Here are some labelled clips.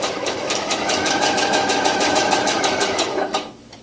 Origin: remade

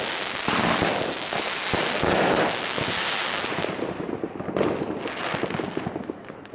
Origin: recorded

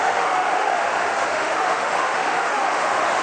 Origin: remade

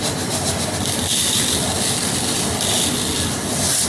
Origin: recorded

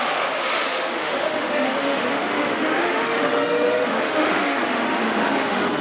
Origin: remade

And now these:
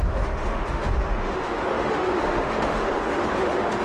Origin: remade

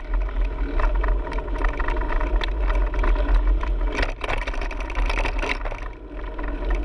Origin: recorded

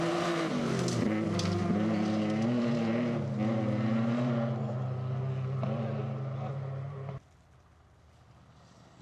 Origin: recorded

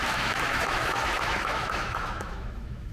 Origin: remade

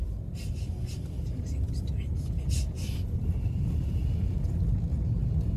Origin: recorded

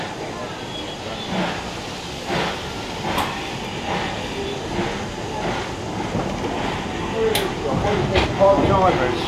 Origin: recorded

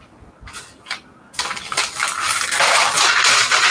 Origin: recorded